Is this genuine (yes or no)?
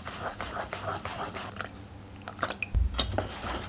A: yes